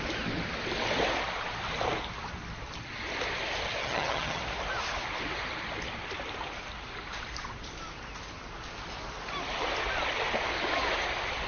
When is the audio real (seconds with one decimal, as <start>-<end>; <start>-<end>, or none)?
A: 0.0-3.8; 4.4-11.5